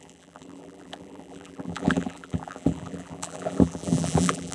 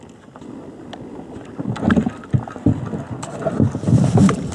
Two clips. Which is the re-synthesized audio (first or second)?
first